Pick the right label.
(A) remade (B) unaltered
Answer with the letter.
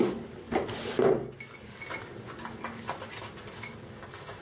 B